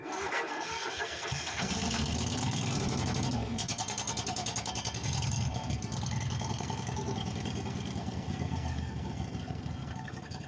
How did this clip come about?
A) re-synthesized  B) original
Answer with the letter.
A